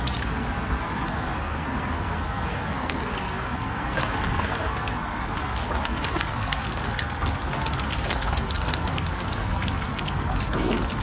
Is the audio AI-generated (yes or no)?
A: yes